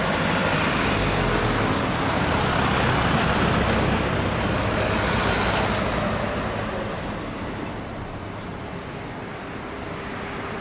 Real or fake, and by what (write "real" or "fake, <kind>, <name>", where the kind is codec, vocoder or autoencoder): real